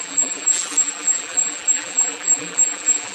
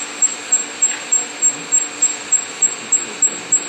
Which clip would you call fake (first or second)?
first